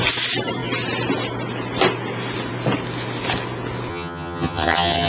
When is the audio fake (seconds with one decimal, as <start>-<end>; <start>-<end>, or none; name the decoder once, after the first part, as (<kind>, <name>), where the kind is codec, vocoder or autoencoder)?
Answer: 3.9-5.1 (vocoder, HiFi-GAN)